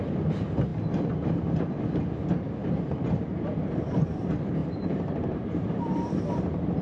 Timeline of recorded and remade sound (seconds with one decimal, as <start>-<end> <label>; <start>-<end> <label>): 0.0-2.6 recorded; 2.6-3.1 remade; 3.1-4.6 recorded; 4.6-6.8 remade